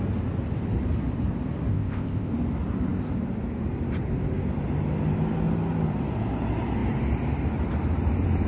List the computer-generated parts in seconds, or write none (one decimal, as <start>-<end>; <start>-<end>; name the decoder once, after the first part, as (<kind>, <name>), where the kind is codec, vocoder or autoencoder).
1.7-2.3 (codec, ZipCodec)